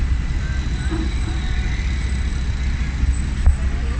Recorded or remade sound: recorded